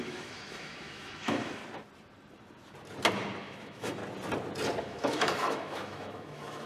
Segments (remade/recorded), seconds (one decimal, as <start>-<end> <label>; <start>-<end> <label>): 0.0-1.6 remade; 1.6-3.4 recorded; 3.4-4.0 remade; 4.0-4.8 recorded; 4.8-6.7 remade